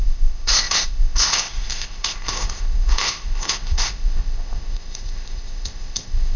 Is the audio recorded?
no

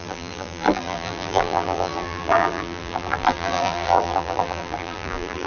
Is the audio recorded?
no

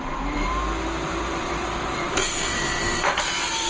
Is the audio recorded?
no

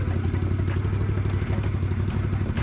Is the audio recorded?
yes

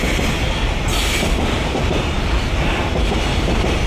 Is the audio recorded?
yes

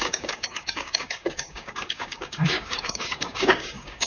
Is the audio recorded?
no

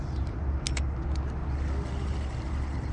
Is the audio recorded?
yes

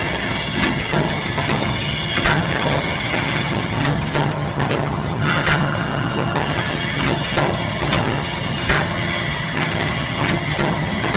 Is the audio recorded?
no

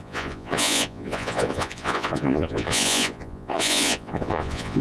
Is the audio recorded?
no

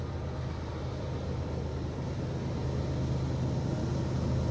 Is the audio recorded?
yes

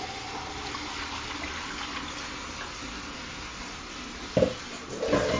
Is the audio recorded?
yes